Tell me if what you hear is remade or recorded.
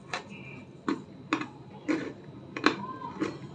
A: recorded